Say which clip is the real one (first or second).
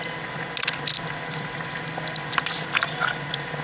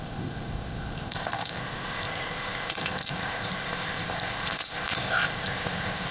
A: first